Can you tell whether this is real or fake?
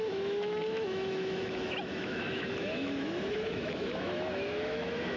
fake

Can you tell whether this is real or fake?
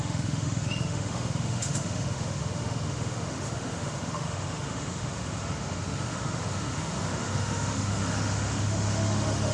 fake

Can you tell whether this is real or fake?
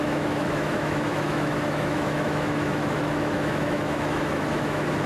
fake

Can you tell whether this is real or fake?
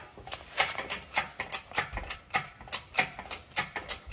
real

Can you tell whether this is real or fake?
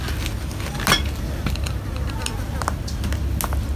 real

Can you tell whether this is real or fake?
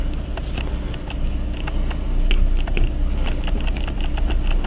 real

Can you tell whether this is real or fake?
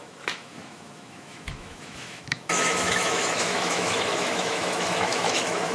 fake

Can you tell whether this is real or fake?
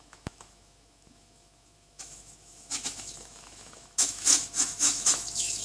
fake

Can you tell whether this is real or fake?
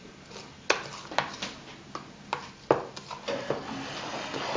real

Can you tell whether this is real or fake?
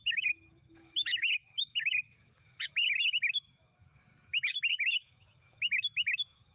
fake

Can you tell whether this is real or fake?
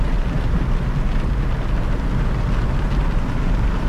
real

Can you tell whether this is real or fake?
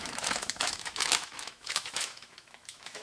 fake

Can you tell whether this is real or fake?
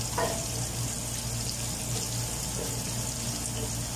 real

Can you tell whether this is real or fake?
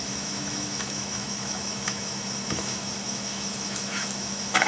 fake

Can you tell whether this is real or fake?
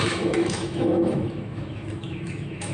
fake